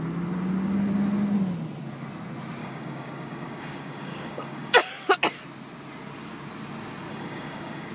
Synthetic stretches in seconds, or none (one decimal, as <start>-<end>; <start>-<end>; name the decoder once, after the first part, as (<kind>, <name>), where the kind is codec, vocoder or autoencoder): 2.6-4.9 (codec, DAC); 7.1-7.9